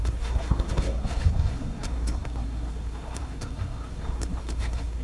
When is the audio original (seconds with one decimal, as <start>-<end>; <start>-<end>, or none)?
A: none